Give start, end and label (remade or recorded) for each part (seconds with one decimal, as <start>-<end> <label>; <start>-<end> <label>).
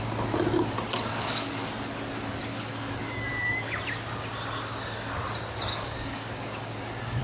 0.0-1.1 recorded; 1.1-1.7 remade; 1.7-2.5 recorded; 2.5-3.8 remade; 3.8-5.7 recorded; 5.7-7.2 remade